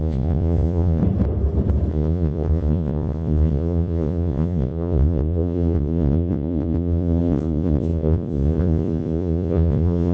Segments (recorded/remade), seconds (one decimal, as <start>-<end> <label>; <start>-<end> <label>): 0.0-1.0 remade; 1.0-1.9 recorded; 1.9-10.1 remade